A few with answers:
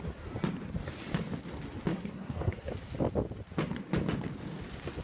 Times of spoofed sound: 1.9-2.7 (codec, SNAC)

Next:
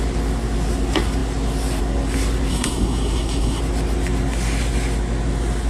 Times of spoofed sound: 2.5-3.6 (codec, SNAC)

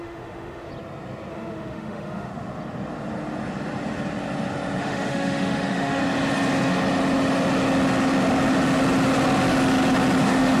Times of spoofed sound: 0.0-0.7 (autoencoder, DAC-VAE); 1.3-2.3; 4.8-6.0; 10.2-10.6